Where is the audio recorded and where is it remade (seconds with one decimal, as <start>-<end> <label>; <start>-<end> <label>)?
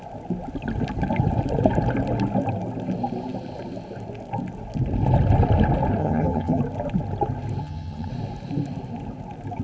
0.0-6.0 recorded; 6.0-6.6 remade; 6.6-7.6 recorded; 7.6-8.1 remade; 8.1-9.6 recorded